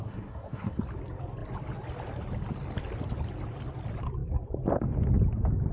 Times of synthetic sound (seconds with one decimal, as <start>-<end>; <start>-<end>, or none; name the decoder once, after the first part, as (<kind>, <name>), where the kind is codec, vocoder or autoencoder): 0.0-0.8 (codec, SNAC)